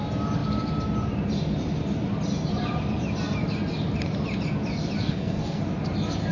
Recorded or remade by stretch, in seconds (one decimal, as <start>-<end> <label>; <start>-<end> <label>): 0.0-5.0 recorded; 5.0-5.6 remade; 5.6-6.3 recorded